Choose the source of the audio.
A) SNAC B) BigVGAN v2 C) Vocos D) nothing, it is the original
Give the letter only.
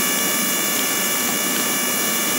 B